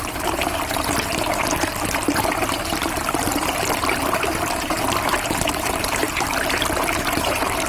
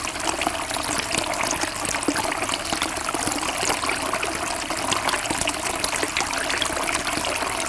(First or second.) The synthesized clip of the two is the first